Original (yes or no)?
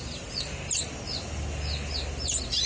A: yes